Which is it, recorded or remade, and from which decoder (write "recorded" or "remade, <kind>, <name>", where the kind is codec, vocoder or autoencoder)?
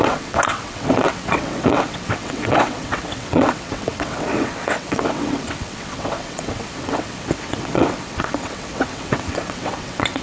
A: remade, vocoder, WaveNeXt